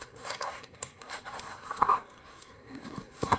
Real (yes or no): no